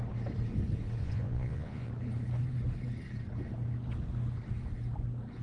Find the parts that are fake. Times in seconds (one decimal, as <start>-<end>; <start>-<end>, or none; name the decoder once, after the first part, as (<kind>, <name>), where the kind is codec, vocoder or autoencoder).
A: 1.0-1.9 (vocoder, Vocos)